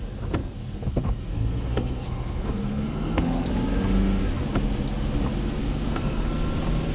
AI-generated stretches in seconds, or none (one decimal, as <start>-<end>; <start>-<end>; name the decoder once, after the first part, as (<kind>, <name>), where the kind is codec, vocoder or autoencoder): 0.4-3.5 (codec, SNAC); 5.6-6.3